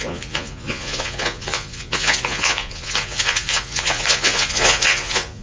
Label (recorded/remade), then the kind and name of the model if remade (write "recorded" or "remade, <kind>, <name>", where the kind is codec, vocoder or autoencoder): remade, vocoder, Vocos